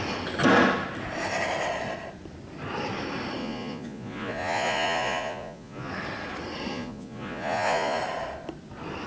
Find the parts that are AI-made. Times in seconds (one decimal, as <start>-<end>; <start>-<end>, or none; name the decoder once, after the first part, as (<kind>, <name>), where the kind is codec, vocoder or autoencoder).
3.4-5.9 (vocoder, Vocos); 6.7-8.0